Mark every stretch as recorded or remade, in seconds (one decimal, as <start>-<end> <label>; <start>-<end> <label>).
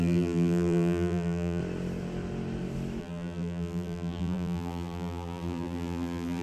0.0-1.6 remade; 1.6-3.0 recorded; 3.0-6.4 remade